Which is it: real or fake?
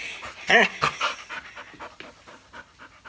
real